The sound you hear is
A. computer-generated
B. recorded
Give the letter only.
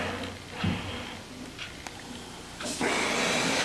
B